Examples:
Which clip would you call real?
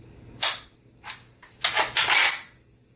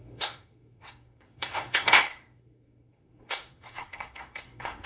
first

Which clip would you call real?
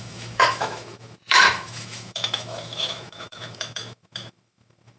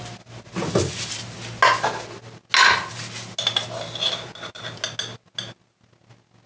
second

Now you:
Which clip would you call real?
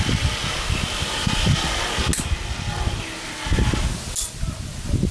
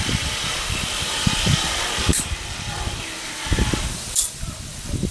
first